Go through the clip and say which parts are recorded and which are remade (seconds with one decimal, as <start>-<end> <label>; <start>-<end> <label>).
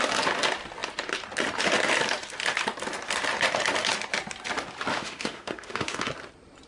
0.0-4.9 recorded; 4.9-6.1 remade; 6.1-6.7 recorded